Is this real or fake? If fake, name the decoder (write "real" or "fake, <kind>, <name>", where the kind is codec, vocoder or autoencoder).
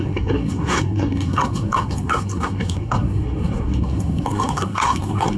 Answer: fake, codec, SNAC